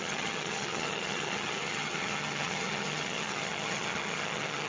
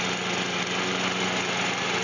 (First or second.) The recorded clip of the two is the second